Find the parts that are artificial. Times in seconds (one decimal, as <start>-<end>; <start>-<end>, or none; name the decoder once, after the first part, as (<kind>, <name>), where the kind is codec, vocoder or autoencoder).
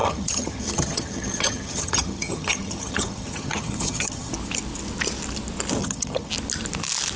0.0-4.3 (vocoder, HiFi-GAN); 5.8-6.3